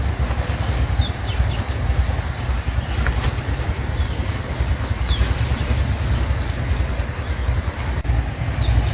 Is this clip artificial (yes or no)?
no